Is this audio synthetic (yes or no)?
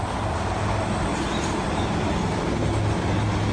no